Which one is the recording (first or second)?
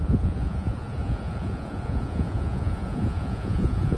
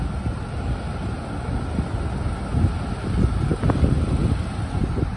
second